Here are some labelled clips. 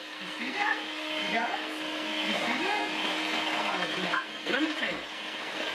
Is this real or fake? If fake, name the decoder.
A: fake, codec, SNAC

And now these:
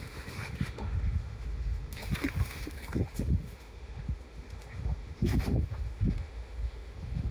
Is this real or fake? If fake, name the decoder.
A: fake, autoencoder, DAC-VAE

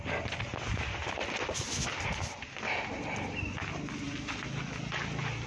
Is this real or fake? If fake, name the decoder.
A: real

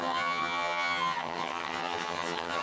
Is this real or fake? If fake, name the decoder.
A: fake, vocoder, HiFi-GAN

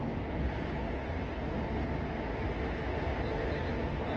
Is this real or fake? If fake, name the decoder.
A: real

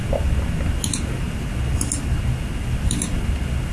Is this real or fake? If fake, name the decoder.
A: real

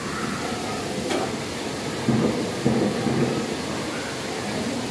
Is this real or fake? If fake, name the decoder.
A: fake, vocoder, BigVGAN v2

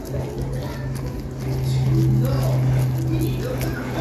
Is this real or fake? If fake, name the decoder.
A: real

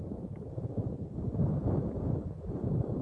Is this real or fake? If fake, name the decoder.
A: real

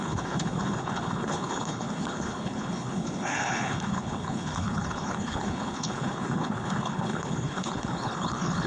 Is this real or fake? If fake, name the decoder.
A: fake, codec, HILCodec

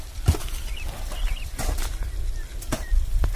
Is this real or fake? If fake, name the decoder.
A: fake, vocoder, BigVGAN v2